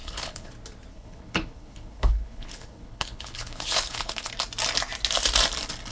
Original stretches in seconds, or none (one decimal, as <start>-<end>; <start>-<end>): 0.5-0.9; 4.3-5.9

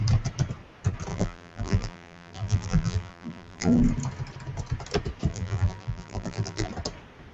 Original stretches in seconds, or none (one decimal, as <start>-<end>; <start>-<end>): 0.0-1.1; 3.8-5.3; 6.7-7.3

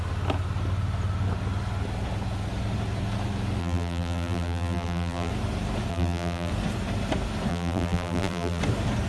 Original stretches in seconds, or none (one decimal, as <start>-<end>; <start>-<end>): 0.0-3.6; 5.3-5.9; 6.5-7.5; 8.6-9.1

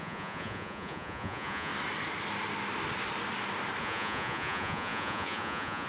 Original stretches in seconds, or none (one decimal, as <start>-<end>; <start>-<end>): 1.7-3.8

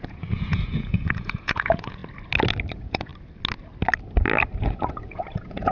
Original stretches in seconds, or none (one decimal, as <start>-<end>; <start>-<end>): 2.0-2.7; 3.1-4.7